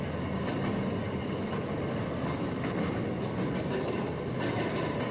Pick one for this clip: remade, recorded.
recorded